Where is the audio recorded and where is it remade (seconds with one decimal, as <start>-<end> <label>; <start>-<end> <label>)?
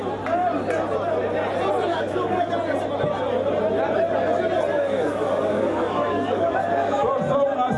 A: 0.0-1.9 recorded; 1.9-2.5 remade; 2.5-4.7 recorded; 4.7-7.1 remade; 7.1-7.8 recorded